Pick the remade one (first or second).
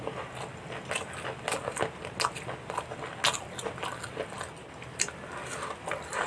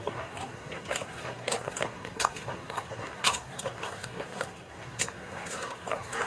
second